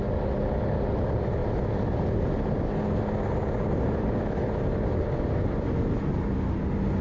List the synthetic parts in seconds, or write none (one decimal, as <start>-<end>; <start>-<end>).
none